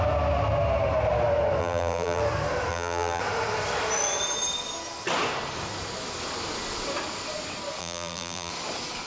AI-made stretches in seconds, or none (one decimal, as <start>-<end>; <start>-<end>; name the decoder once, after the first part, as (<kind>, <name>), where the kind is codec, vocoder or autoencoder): 1.6-2.2 (vocoder, BigVGAN v2); 2.7-3.2; 7.8-8.5